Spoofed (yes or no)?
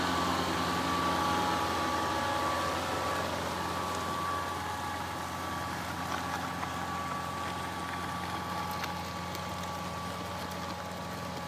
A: no